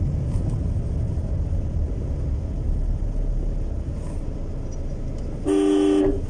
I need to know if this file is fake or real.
real